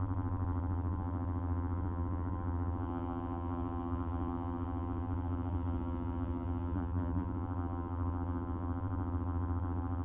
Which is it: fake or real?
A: fake